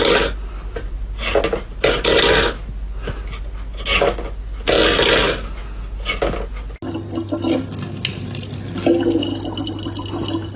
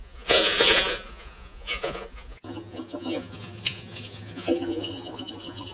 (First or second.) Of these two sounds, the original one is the first